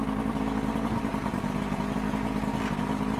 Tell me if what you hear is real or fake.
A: real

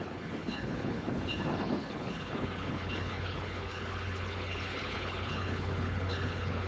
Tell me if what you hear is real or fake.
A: fake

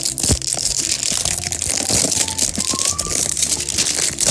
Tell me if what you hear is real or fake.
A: fake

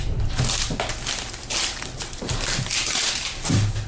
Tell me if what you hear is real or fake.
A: real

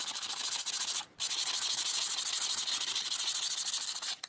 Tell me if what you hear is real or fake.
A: real